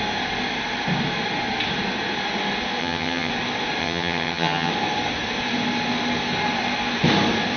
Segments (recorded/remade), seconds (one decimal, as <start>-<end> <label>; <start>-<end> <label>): 0.0-2.8 recorded; 2.8-3.3 remade; 3.3-3.8 recorded; 3.8-4.7 remade; 4.7-7.6 recorded